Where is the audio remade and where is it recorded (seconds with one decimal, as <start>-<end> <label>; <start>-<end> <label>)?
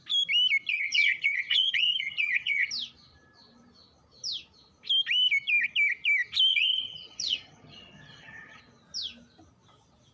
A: 0.0-0.7 recorded; 0.7-2.7 remade; 2.7-6.5 recorded; 6.5-8.6 remade; 8.6-10.1 recorded